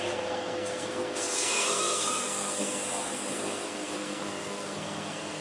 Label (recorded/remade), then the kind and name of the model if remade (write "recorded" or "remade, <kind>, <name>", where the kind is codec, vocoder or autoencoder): remade, codec, SNAC